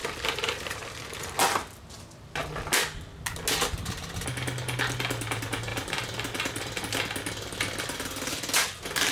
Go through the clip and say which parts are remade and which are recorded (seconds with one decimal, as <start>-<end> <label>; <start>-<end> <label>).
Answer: 0.0-0.5 remade; 0.5-5.7 recorded; 5.7-6.8 remade; 6.8-9.1 recorded